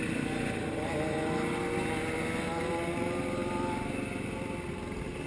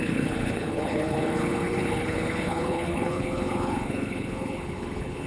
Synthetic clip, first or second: second